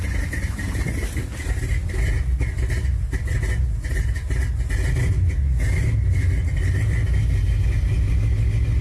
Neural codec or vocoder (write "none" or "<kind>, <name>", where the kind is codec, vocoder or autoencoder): none